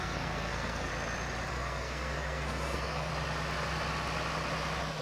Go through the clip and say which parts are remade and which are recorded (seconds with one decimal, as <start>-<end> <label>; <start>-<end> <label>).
0.0-0.9 remade; 0.9-1.5 recorded; 1.5-3.1 remade; 3.1-5.0 recorded